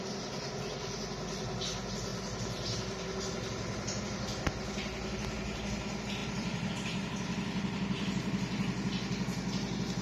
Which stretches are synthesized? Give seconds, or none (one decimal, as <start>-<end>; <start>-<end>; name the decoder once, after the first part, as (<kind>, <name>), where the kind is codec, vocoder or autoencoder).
6.2-6.7 (vocoder, BigVGAN v2)